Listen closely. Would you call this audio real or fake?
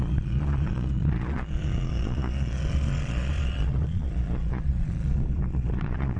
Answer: fake